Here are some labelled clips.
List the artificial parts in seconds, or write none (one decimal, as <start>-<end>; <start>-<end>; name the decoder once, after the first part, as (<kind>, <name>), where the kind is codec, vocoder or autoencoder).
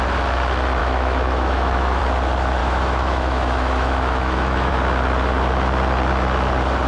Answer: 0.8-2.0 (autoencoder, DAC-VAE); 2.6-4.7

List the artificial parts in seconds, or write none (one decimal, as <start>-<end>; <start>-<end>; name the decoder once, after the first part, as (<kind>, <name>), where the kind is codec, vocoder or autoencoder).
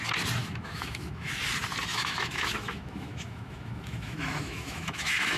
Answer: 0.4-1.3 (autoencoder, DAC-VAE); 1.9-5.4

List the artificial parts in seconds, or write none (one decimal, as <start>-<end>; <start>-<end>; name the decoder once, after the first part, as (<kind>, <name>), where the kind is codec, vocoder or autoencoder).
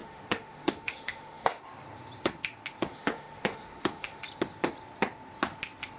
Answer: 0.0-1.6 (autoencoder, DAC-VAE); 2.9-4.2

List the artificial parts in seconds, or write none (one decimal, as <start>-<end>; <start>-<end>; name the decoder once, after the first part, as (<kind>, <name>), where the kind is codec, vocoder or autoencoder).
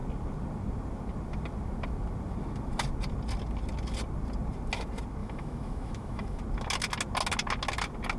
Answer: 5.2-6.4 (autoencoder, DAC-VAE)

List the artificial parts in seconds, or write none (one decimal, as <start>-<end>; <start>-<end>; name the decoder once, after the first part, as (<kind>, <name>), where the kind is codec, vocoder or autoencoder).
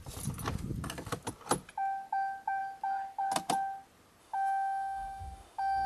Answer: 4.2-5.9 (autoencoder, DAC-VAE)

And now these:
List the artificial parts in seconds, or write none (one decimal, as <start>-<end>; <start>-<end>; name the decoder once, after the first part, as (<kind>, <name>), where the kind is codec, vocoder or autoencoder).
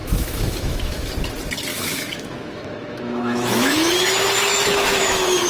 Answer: 0.0-1.1 (autoencoder, DAC-VAE); 1.7-3.9; 4.5-5.5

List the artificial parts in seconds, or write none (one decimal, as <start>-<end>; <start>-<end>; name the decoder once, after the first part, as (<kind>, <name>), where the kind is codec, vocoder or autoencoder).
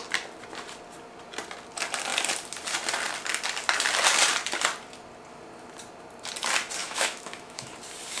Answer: 6.8-7.7 (autoencoder, DAC-VAE)